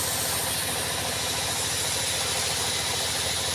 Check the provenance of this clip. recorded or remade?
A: recorded